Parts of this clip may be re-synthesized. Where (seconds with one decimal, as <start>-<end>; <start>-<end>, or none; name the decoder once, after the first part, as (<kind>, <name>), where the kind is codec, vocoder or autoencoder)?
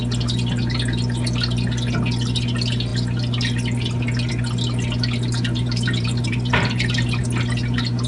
5.6-7.2 (vocoder, BigVGAN v2)